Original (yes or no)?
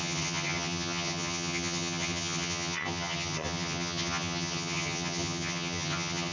no